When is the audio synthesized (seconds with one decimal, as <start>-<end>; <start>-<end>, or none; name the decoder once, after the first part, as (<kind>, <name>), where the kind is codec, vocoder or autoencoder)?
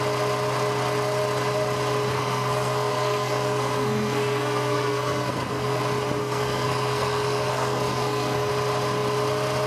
2.1-5.8 (codec, SNAC); 6.2-8.5